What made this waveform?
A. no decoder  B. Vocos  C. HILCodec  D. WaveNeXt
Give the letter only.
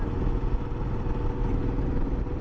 A